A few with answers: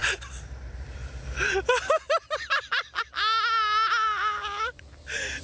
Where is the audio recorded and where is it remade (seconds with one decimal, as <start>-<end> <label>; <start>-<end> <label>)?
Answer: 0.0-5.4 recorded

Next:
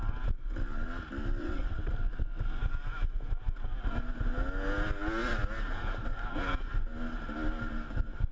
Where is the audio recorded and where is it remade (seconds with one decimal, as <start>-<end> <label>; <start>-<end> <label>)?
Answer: 0.0-1.4 recorded; 1.4-1.9 remade; 1.9-8.3 recorded

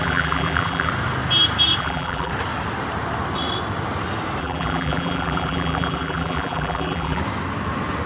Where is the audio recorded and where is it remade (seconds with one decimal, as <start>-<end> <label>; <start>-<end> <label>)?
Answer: 0.0-0.9 remade; 0.9-1.8 recorded; 1.8-2.3 remade; 2.3-4.4 recorded; 4.4-7.2 remade; 7.2-8.1 recorded

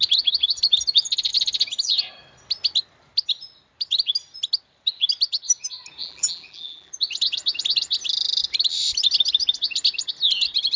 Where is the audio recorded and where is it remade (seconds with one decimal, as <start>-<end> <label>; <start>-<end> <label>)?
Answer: 0.0-6.0 recorded; 6.0-6.9 remade; 6.9-10.8 recorded

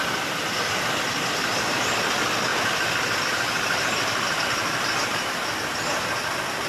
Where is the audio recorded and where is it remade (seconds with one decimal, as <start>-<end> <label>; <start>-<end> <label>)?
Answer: 0.0-6.7 recorded

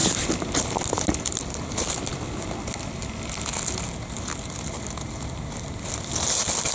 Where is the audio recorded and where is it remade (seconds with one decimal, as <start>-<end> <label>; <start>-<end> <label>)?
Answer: 0.0-6.7 recorded

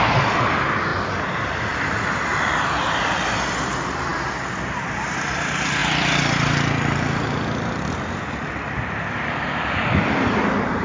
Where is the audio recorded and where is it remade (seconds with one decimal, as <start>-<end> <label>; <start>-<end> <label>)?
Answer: 0.0-0.9 recorded; 0.9-3.3 remade; 3.3-5.8 recorded; 5.8-8.1 remade; 8.1-10.8 recorded